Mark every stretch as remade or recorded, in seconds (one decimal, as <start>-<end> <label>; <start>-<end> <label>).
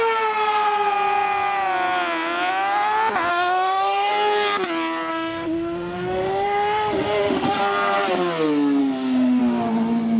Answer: 0.0-3.3 recorded; 3.3-4.1 remade; 4.1-5.1 recorded; 5.1-7.6 remade; 7.6-8.8 recorded; 8.8-9.4 remade; 9.4-10.2 recorded